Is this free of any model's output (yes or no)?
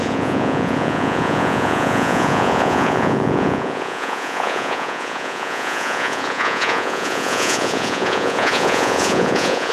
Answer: no